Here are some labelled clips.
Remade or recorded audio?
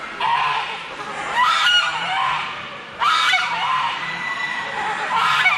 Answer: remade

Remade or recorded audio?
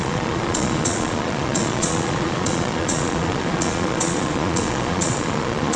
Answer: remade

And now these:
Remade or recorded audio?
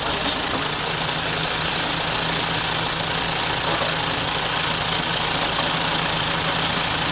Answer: recorded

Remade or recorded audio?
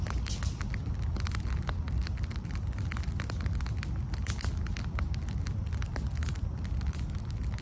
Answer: recorded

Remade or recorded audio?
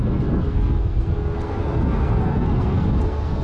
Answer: remade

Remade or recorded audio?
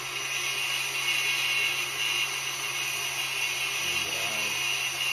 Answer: recorded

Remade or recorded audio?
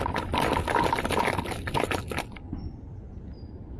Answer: recorded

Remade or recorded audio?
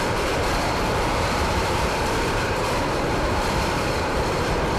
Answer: remade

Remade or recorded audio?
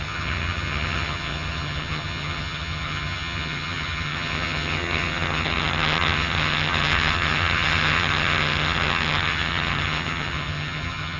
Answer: remade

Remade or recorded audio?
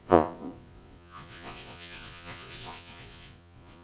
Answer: remade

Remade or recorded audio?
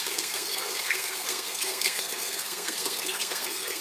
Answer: remade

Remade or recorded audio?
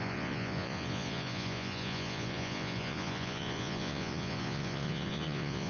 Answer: remade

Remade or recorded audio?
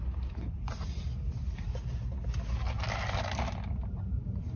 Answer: recorded